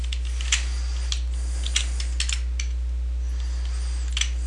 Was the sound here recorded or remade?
recorded